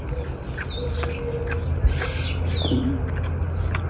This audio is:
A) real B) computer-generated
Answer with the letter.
A